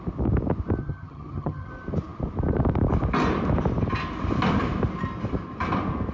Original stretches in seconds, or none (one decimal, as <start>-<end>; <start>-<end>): 0.0-0.8; 1.7-6.1